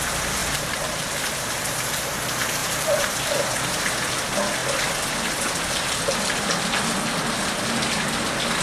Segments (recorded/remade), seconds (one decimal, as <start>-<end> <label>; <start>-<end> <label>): 0.0-0.4 recorded; 0.4-1.7 remade; 1.7-2.6 recorded; 2.6-3.8 remade; 3.8-8.6 recorded